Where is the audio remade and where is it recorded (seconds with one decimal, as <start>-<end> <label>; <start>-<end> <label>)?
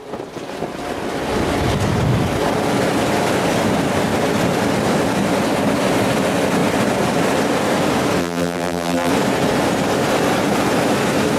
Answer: 0.0-8.2 recorded; 8.2-9.1 remade; 9.1-11.4 recorded